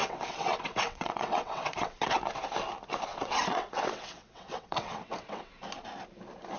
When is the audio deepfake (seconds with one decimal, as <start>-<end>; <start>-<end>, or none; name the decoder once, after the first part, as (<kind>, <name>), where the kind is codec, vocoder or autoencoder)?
0.0-2.2 (vocoder, WaveNeXt); 3.1-5.5